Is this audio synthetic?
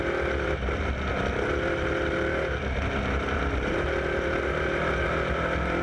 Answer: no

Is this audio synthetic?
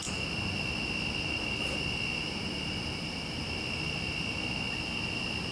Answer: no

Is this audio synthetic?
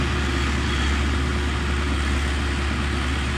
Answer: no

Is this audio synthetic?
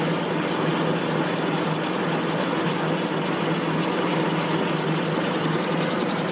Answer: no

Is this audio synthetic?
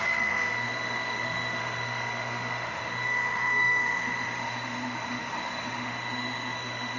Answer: yes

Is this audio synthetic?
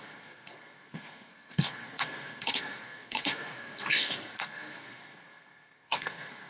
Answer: yes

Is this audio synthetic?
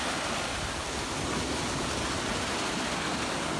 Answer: no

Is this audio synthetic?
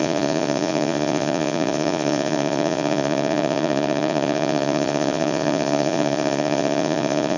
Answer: yes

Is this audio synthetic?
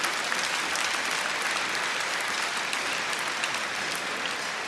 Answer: no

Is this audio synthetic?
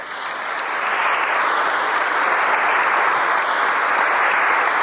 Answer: yes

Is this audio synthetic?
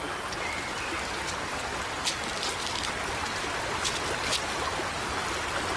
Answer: no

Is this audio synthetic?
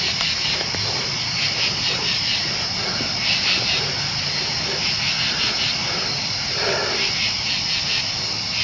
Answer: no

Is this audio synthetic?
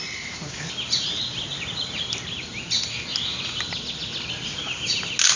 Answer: no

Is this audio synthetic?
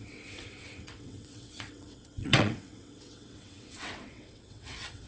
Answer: yes